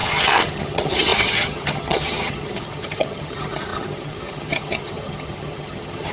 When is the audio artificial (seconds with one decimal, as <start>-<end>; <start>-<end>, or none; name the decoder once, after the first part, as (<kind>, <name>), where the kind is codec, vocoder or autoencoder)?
0.0-6.1 (vocoder, HiFi-GAN)